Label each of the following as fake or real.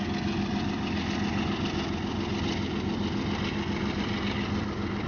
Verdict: real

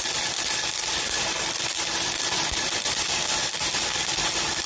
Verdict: real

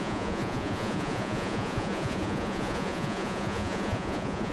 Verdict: fake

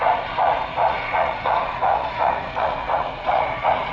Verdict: fake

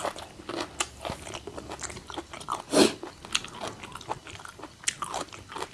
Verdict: real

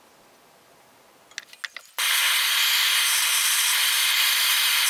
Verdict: real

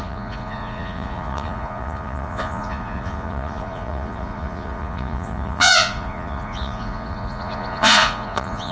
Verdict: fake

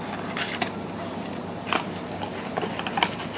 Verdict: real